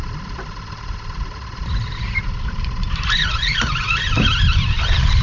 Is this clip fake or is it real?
real